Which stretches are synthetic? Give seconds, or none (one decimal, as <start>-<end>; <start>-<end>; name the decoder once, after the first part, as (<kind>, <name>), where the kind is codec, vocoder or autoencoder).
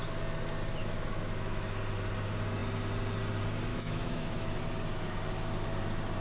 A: 0.8-1.8 (autoencoder, DAC-VAE); 3.7-4.6